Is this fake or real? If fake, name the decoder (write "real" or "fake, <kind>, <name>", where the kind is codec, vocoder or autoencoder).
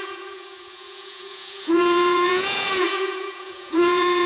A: fake, vocoder, Vocos